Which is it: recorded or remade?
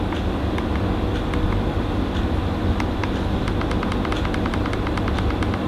recorded